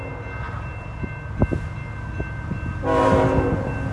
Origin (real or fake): real